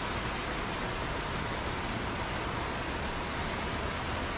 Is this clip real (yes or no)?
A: yes